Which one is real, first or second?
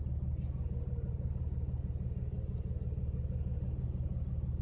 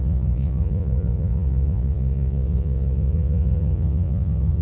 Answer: first